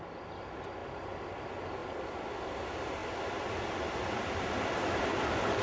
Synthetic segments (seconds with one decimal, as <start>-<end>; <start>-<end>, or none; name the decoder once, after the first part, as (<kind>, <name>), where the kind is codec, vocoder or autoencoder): none

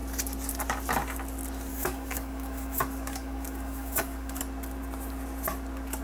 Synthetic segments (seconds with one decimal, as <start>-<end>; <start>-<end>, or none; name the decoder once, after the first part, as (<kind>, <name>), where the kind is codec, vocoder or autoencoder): 1.7-4.4 (codec, DAC)

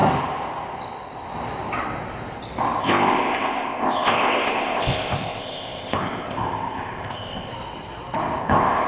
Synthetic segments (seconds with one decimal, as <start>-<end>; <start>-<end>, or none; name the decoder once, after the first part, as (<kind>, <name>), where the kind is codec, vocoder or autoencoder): 2.8-7.5 (codec, ZipCodec); 8.4-8.9

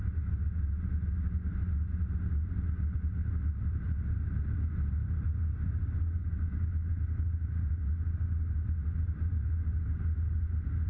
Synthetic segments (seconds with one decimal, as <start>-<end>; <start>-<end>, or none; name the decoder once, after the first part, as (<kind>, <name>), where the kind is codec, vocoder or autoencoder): 6.2-7.0 (autoencoder, DAC-VAE)

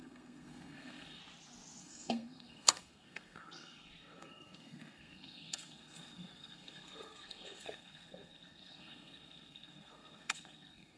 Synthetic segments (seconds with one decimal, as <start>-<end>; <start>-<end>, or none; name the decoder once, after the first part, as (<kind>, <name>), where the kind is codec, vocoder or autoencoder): 0.0-1.2 (codec, SNAC); 1.8-11.0

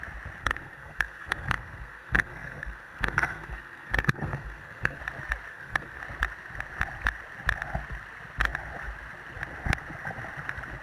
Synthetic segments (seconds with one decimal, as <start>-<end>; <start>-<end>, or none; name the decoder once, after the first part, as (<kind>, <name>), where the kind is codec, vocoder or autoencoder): 0.4-5.0 (codec, SNAC); 5.5-6.0

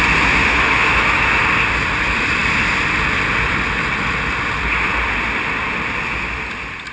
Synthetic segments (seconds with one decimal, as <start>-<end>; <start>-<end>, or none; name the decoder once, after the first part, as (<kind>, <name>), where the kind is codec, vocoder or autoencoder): 0.4-1.4 (autoencoder, DAC-VAE)

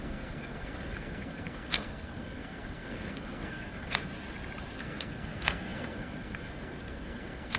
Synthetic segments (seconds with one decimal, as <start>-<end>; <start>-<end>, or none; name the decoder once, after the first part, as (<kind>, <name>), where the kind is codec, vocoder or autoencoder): 0.0-4.1 (codec, SNAC); 4.8-7.6